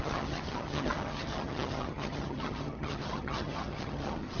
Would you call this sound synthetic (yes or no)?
yes